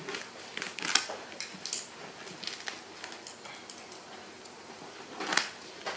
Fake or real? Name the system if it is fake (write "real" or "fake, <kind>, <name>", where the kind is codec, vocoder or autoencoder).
real